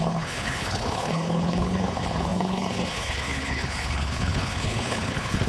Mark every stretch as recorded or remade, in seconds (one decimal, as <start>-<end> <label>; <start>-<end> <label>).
0.0-5.5 remade